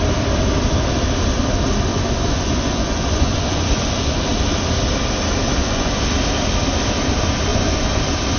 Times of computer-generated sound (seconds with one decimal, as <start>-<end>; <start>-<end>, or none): 1.9-4.2; 5.6-6.1; 7.5-8.0